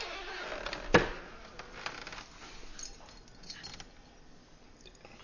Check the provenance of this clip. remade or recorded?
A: recorded